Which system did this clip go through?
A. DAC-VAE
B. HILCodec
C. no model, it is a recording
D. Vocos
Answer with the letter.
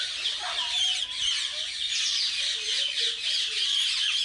C